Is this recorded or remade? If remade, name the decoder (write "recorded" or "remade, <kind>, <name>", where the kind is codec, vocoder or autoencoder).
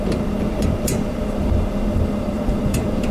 remade, vocoder, BigVGAN v2